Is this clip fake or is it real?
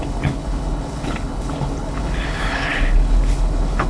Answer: fake